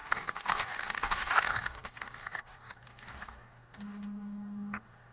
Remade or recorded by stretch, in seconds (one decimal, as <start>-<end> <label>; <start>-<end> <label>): 0.0-5.1 remade